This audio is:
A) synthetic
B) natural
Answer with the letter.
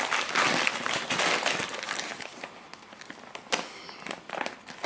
B